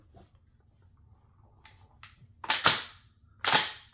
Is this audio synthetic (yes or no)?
no